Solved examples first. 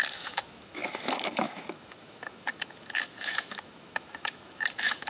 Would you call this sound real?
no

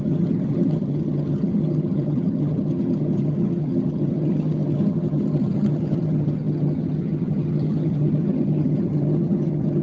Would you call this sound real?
no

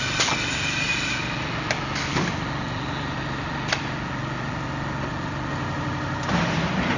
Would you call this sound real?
yes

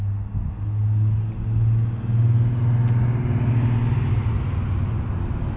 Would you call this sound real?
yes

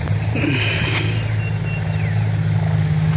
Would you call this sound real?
yes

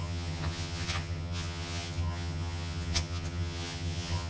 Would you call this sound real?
no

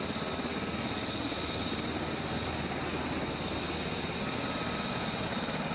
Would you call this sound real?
yes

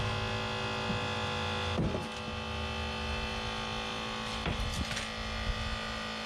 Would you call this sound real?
yes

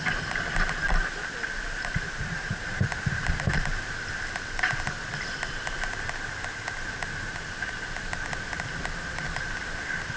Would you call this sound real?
yes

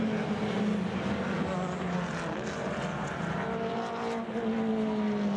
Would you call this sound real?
yes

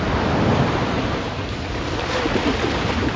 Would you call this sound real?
yes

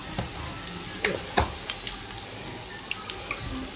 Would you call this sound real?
yes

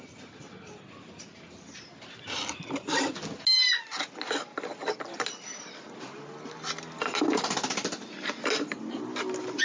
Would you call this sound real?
yes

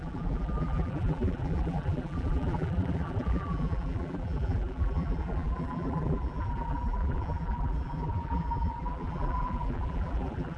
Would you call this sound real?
no